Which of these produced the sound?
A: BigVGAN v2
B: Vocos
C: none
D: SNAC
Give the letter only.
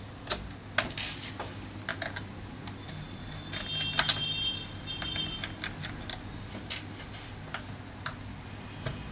C